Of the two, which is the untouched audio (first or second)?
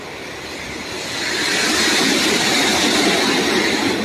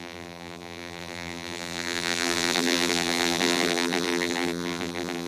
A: first